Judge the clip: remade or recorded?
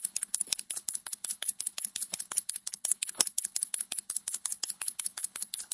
remade